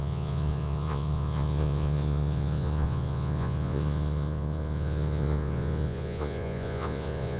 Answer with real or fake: fake